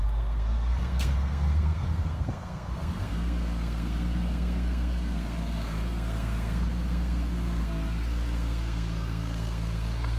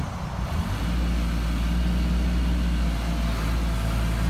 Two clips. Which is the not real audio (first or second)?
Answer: first